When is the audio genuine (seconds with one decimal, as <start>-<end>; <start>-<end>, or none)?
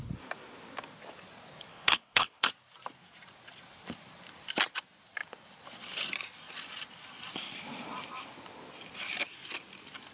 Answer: 0.0-1.7; 2.5-10.1